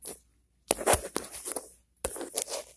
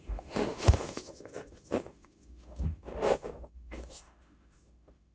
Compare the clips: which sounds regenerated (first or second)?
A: second